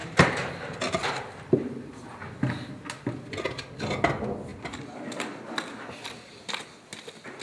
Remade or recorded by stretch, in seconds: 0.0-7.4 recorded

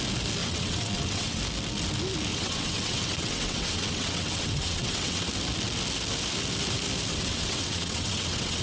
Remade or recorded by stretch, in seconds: 0.0-0.4 recorded; 0.4-1.4 remade; 1.4-2.3 recorded; 2.3-5.3 remade; 5.3-7.1 recorded; 7.1-8.6 remade

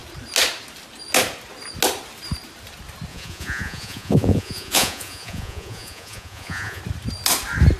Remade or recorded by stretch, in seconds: 0.0-3.1 recorded; 3.1-6.8 remade; 6.8-7.8 recorded

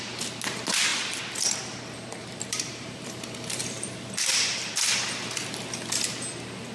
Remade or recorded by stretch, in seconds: 0.0-2.2 recorded; 2.2-3.1 remade; 3.1-3.6 recorded; 3.6-4.7 remade; 4.7-6.7 recorded

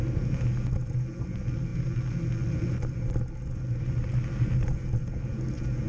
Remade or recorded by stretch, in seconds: 0.0-5.9 recorded

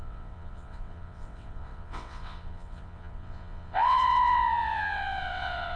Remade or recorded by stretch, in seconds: 0.0-5.8 remade